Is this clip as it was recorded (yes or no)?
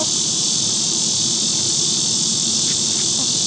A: no